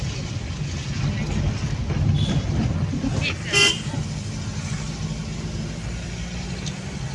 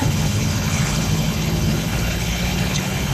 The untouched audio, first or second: first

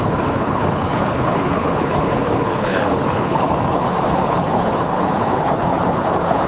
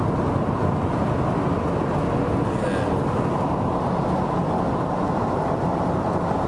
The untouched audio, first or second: second